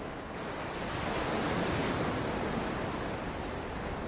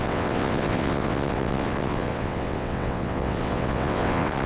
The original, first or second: first